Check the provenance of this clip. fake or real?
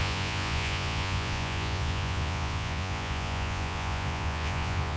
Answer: fake